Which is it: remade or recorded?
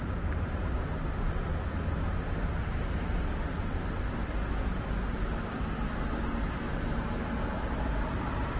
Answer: recorded